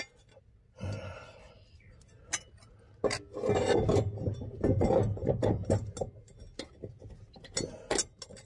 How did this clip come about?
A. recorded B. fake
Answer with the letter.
A